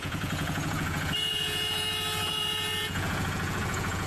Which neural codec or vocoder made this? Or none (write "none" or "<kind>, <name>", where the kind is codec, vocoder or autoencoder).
vocoder, Vocos